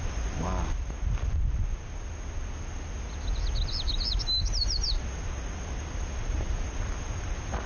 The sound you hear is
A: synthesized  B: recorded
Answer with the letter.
B